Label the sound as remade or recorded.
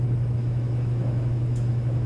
remade